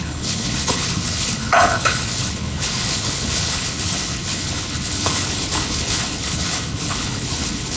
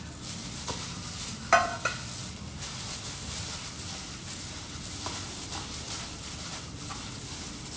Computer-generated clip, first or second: first